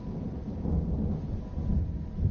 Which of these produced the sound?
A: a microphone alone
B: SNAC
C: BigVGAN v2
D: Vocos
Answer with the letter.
A